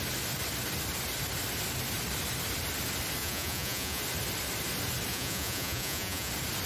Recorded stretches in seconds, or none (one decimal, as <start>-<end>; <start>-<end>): 0.0-3.2; 4.0-5.1; 6.3-6.7